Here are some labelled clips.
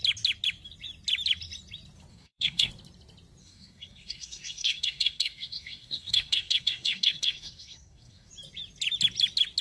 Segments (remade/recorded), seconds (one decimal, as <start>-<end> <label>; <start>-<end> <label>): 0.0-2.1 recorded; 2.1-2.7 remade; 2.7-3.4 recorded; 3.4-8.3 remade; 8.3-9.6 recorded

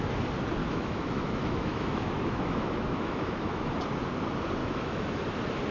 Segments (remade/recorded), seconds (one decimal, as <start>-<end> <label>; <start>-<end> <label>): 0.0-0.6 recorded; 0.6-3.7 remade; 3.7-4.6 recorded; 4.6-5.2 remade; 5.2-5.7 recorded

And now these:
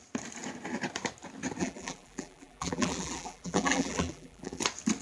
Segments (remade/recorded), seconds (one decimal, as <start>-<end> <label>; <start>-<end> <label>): 0.0-1.6 recorded; 1.6-4.6 remade; 4.6-5.0 recorded

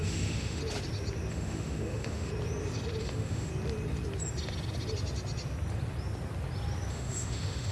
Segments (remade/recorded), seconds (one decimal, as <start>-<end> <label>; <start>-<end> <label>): 0.0-0.6 remade; 0.6-1.3 recorded; 1.3-2.3 remade; 2.3-3.0 recorded; 3.0-3.5 remade; 3.5-6.9 recorded; 6.9-7.7 remade

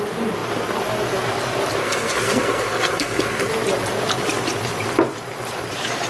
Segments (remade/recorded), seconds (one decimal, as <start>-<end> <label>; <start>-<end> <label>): 0.0-1.8 recorded; 1.8-3.5 remade; 3.5-6.1 recorded